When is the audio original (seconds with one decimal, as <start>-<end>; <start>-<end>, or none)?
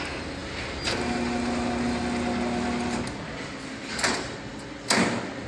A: 0.0-5.5